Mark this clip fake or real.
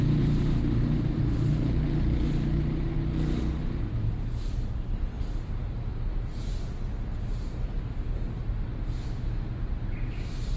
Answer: real